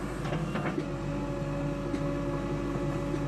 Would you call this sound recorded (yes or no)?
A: yes